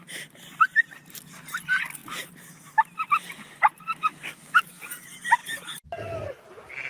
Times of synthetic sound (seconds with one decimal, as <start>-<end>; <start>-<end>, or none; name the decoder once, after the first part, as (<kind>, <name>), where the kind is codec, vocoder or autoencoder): 4.1-4.7 (codec, DAC)